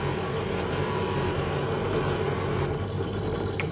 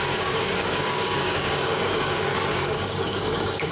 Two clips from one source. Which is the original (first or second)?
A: first